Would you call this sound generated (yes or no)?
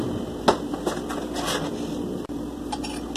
no